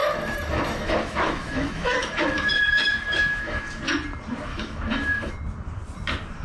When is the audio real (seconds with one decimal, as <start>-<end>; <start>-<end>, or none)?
3.8-4.5; 5.3-6.4